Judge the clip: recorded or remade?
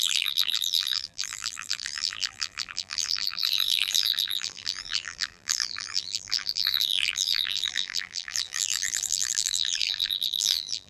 remade